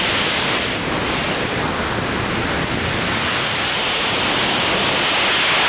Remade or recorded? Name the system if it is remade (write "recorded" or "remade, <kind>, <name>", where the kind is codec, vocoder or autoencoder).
recorded